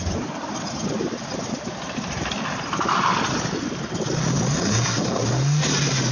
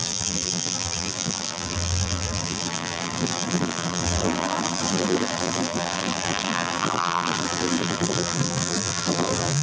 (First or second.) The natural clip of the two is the first